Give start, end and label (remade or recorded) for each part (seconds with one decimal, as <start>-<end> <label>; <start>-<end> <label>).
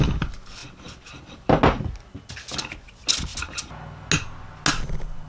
0.0-5.3 recorded